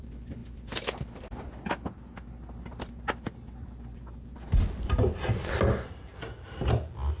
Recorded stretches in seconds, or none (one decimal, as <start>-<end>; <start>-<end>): 0.0-7.2

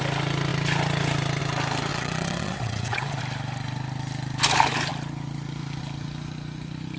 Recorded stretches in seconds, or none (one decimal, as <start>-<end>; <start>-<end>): 0.0-1.9; 3.2-7.0